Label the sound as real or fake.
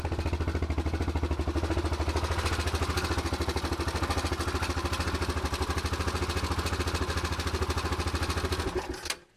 real